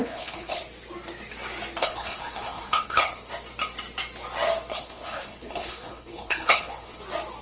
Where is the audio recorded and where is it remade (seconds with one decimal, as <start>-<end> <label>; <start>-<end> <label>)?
0.0-0.6 remade; 0.6-1.8 recorded; 1.8-3.3 remade; 3.3-4.7 recorded; 4.7-7.0 remade; 7.0-7.4 recorded